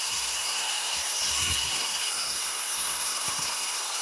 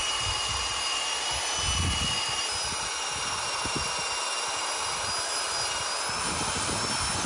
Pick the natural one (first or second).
second